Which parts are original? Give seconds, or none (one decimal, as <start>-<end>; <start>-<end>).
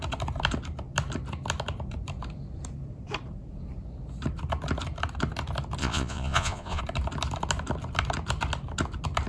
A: 0.0-5.8; 6.8-9.3